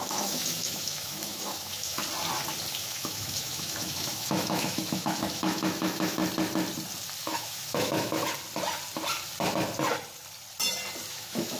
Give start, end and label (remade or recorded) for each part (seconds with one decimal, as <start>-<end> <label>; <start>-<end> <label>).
0.0-2.0 remade; 2.0-2.7 recorded; 2.7-6.2 remade; 6.2-7.2 recorded; 7.2-8.2 remade; 8.2-11.1 recorded; 11.1-11.6 remade